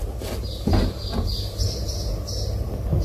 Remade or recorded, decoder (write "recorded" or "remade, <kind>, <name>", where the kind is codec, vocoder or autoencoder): recorded